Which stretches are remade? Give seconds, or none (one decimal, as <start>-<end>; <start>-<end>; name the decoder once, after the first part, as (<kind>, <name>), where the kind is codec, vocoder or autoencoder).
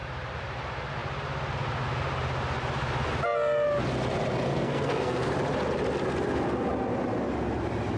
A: 4.5-5.3 (codec, SNAC)